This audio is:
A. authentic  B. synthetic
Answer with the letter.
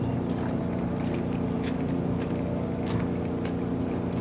A